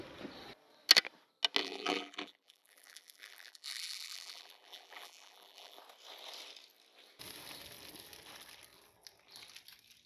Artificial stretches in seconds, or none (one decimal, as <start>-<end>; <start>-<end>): 1.6-5.8